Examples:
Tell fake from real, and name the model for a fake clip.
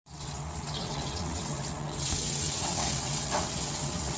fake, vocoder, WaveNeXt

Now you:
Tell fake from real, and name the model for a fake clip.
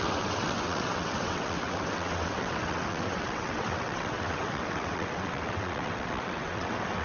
fake, vocoder, WaveNeXt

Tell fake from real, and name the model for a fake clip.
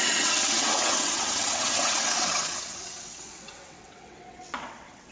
fake, vocoder, WaveNeXt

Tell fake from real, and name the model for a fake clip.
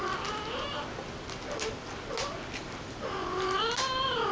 real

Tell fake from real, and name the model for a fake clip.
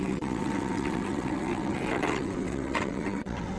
fake, vocoder, WaveNeXt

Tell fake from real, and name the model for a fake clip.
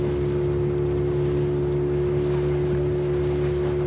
real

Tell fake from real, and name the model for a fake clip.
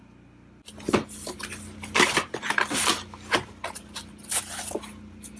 real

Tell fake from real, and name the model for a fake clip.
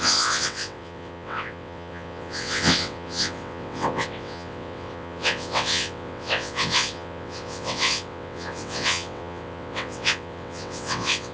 fake, vocoder, WaveNeXt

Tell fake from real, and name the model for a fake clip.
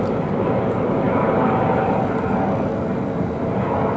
real